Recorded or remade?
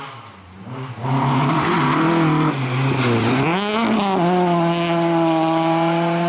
recorded